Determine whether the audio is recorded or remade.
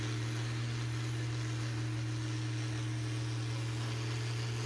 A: recorded